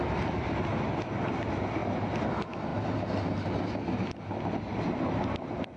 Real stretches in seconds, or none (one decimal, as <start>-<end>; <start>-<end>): 0.0-5.8